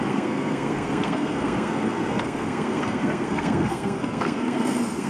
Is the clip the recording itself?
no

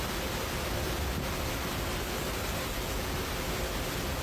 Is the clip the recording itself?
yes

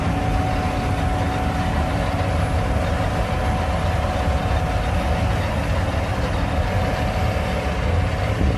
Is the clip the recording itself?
yes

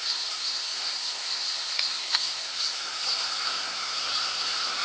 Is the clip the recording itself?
no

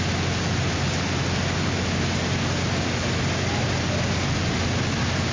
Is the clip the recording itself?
yes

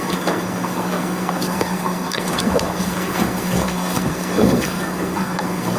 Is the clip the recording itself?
no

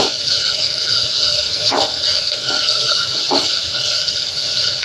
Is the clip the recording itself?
no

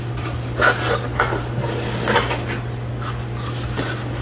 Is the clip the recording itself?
yes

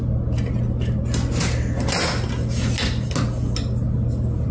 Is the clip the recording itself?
yes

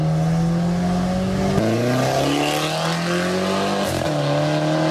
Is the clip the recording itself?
yes